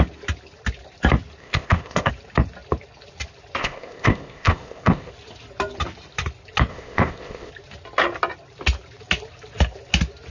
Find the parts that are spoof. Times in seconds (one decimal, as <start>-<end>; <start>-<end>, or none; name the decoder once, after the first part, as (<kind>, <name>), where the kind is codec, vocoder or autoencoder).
1.4-2.1 (codec, ZipCodec); 3.6-5.1; 6.7-7.5